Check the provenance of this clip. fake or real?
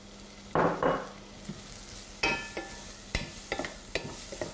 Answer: real